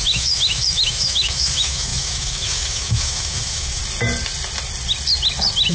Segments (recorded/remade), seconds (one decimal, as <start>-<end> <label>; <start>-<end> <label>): 0.0-3.8 remade; 3.8-5.7 recorded